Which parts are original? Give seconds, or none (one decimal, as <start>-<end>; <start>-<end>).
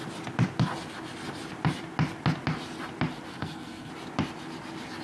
0.0-3.3; 3.9-5.0